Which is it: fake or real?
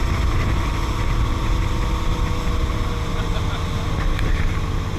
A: real